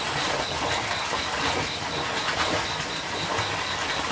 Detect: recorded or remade recorded